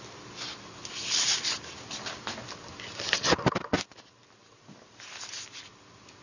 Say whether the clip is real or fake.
real